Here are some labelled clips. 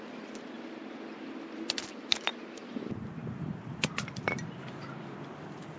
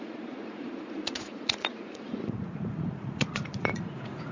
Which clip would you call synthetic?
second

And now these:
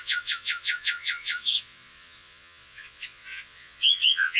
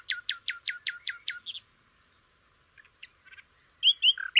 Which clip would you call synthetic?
first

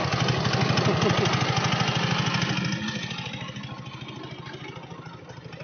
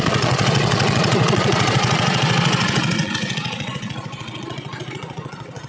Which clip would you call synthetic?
second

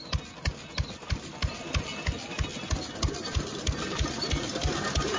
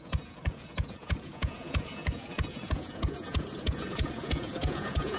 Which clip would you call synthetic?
second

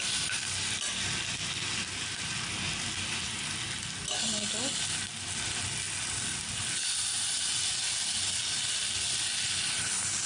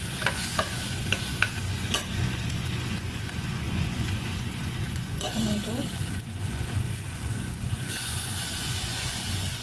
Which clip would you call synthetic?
second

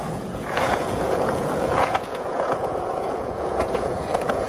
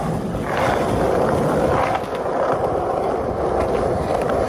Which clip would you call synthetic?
first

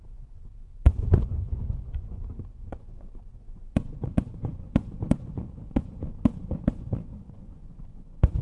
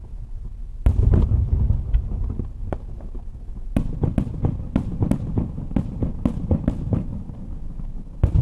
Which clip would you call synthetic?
first